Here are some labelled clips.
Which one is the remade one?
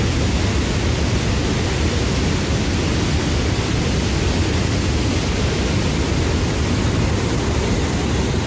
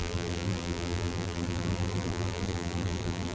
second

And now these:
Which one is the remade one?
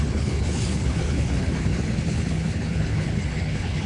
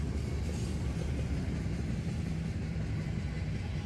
first